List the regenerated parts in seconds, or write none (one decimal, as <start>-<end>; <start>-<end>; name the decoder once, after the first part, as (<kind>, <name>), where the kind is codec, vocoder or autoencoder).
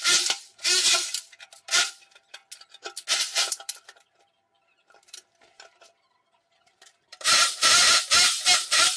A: 0.0-2.4 (vocoder, BigVGAN v2); 3.5-9.0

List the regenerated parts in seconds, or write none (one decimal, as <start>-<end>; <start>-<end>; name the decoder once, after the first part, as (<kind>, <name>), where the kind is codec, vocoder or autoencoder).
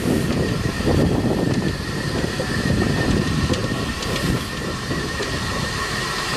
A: 0.0-3.6 (vocoder, BigVGAN v2); 4.3-6.4